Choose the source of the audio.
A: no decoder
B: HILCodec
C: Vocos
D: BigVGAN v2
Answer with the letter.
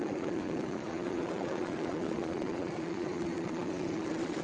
C